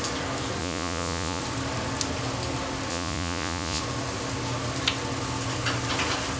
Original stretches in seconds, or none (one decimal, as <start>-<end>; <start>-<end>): 0.0-0.6; 1.4-2.9; 3.8-6.4